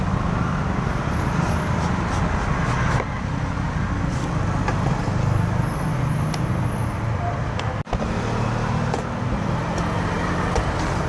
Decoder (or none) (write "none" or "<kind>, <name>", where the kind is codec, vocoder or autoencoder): none